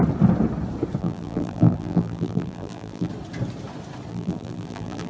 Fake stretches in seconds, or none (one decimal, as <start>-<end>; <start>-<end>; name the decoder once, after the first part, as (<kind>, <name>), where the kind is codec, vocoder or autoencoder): 1.0-3.1 (vocoder, BigVGAN v2); 4.1-5.1